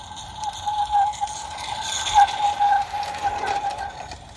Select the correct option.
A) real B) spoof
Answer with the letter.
A